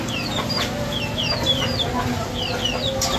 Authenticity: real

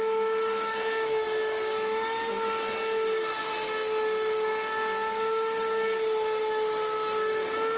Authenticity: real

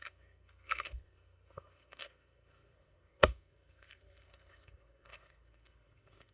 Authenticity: fake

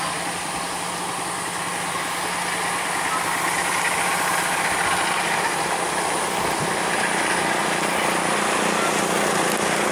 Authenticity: real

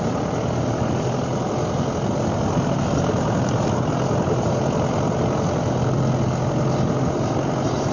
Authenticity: real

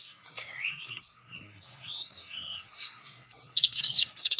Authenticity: fake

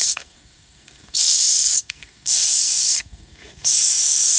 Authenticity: fake